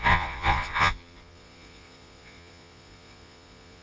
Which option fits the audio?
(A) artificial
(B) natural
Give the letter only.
A